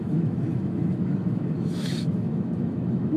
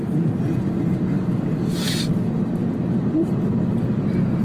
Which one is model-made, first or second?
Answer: first